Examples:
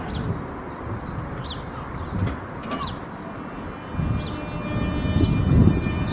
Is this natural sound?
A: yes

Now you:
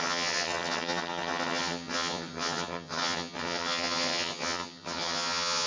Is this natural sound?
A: no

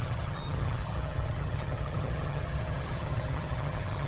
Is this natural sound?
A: no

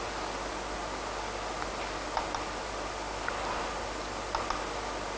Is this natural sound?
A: yes